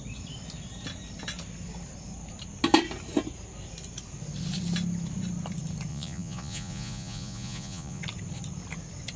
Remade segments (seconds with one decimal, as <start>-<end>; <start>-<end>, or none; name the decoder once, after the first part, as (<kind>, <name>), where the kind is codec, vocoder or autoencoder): 5.9-8.0 (vocoder, Vocos)